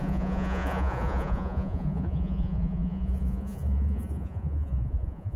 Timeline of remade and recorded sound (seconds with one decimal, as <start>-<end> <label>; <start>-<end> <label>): 0.0-5.4 remade